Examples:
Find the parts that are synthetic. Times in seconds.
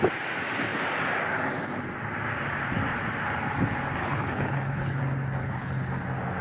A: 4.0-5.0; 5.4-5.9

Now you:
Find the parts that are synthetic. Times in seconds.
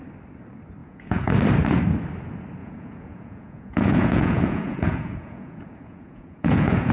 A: 0.8-1.3; 2.6-6.9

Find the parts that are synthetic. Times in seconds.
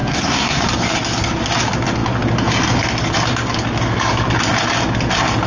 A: 0.0-0.6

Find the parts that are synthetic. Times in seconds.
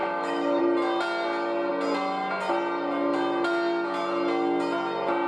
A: 0.0-0.6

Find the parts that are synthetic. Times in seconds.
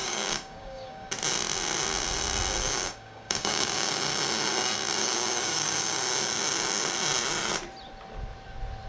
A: 0.0-1.1; 2.6-3.9; 5.0-6.0